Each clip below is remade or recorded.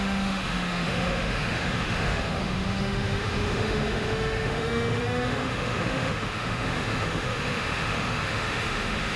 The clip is remade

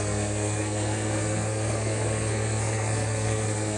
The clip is remade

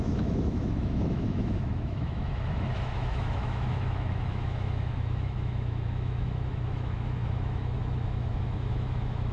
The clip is remade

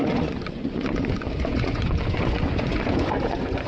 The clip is remade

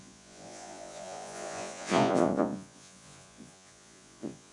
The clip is remade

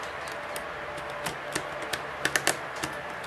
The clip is recorded